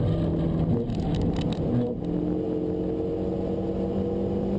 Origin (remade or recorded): recorded